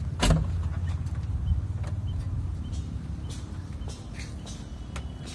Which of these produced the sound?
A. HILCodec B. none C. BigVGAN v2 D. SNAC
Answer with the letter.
B